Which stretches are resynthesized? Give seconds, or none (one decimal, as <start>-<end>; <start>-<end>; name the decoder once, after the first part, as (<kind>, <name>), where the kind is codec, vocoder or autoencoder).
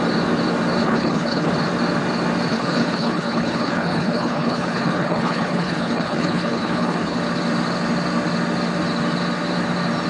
0.8-1.5 (codec, HILCodec); 2.5-7.2